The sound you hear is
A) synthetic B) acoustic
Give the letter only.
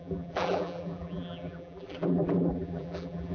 A